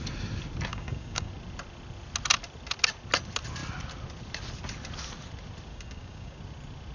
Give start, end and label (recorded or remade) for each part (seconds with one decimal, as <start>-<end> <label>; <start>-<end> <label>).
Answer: 0.0-0.7 recorded; 0.7-1.3 remade; 1.3-5.7 recorded; 5.7-6.4 remade; 6.4-6.9 recorded